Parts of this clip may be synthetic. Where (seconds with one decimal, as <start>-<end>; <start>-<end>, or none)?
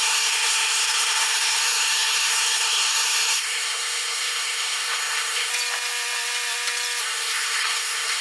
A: 0.0-5.5; 7.0-8.2